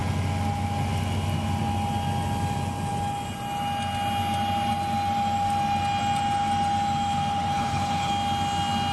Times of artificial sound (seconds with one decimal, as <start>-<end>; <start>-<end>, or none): 7.3-8.1